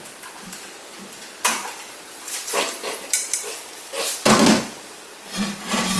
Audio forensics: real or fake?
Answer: fake